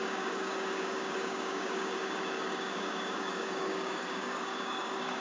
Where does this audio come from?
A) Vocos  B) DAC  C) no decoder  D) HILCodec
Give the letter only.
B